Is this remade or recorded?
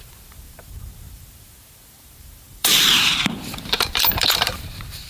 remade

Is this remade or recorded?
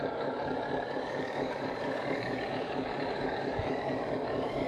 remade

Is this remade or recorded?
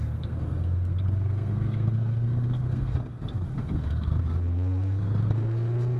remade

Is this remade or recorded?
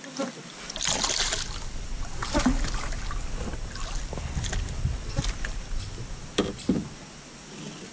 recorded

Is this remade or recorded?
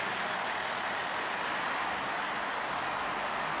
recorded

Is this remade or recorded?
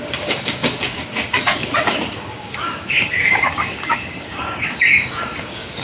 remade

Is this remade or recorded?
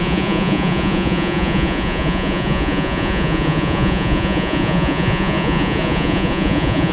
remade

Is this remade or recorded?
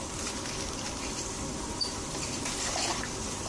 recorded